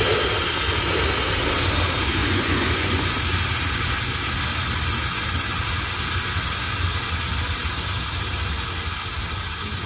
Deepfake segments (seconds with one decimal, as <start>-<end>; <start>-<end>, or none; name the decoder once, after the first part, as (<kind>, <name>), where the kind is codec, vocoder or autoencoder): 2.2-3.1 (vocoder, Vocos)